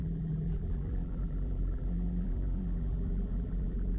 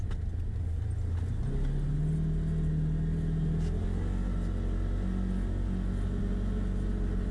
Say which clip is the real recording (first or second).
second